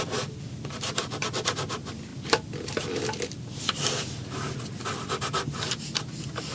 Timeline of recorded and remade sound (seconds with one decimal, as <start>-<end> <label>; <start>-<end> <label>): 0.0-6.5 recorded